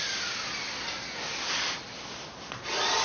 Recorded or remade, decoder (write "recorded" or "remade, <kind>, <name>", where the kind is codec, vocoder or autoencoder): recorded